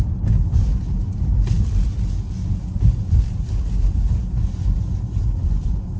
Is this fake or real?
real